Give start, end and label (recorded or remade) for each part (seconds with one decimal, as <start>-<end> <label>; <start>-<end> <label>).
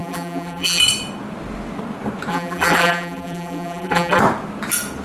0.0-0.8 remade; 0.8-2.3 recorded; 2.3-4.2 remade; 4.2-5.0 recorded